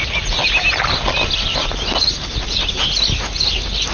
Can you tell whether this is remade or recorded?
recorded